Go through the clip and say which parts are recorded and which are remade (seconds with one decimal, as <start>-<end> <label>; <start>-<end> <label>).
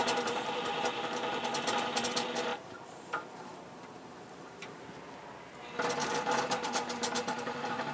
0.0-1.4 remade; 1.4-2.5 recorded; 2.5-4.8 remade; 4.8-6.0 recorded; 6.0-7.9 remade